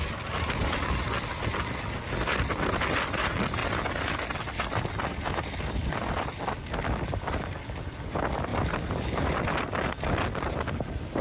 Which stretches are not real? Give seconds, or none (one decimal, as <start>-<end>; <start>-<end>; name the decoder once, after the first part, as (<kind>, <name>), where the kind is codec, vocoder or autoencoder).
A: none